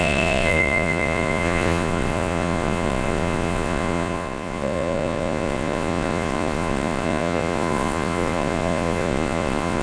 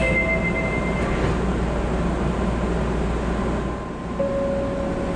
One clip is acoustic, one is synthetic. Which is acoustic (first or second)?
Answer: second